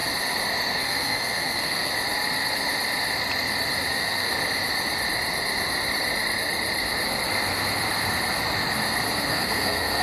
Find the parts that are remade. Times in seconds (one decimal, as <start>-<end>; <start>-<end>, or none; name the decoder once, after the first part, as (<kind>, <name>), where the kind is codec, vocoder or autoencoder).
0.7-1.9 (codec, SNAC); 3.9-4.3; 9.3-10.0